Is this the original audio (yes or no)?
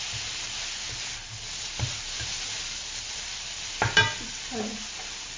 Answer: yes